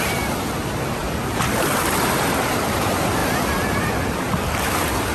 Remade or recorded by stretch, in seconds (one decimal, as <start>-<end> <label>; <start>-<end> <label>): 0.0-5.1 recorded